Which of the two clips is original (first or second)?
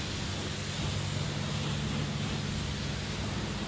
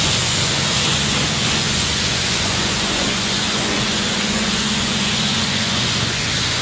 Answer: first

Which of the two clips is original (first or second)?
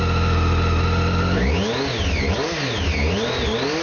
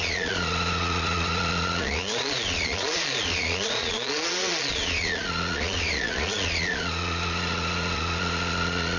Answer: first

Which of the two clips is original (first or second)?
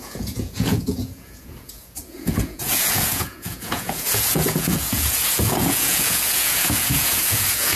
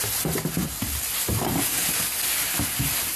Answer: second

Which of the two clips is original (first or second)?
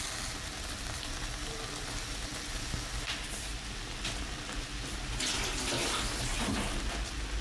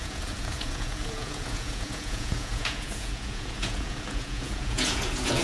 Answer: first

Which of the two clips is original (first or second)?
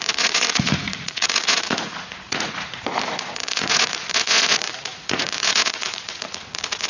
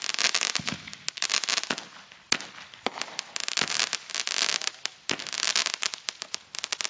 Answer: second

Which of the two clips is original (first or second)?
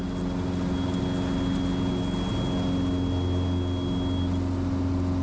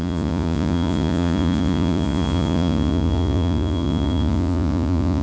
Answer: first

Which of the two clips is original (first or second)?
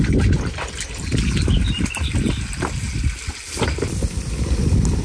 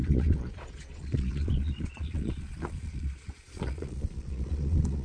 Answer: first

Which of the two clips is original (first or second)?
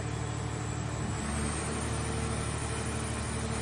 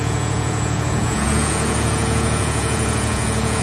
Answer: first